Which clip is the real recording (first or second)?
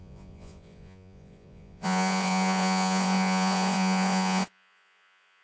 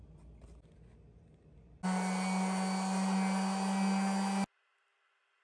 second